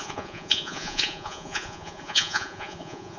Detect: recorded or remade remade